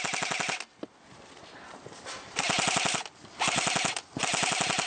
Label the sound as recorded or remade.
recorded